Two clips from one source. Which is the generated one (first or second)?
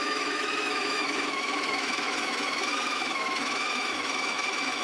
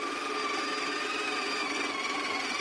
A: first